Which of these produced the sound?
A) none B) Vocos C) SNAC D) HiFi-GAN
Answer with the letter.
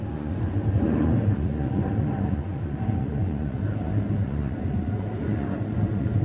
B